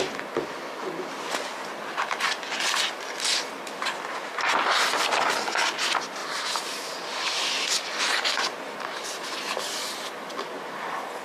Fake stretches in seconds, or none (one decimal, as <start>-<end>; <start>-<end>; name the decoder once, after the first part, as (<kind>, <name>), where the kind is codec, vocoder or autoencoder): 6.2-8.0 (vocoder, BigVGAN v2)